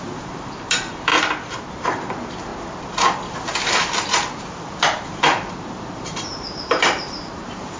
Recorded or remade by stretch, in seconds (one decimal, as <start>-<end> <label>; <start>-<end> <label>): 0.0-1.1 remade; 1.1-1.7 recorded; 1.7-2.5 remade; 2.5-3.8 recorded; 3.8-7.8 remade